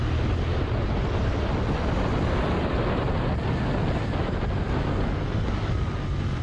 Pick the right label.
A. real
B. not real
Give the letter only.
A